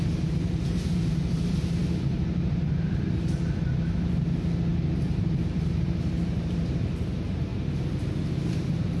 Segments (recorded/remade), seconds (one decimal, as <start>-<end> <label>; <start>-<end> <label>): 0.0-7.5 remade; 7.5-8.5 recorded; 8.5-9.0 remade